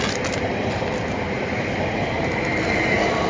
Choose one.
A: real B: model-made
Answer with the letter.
A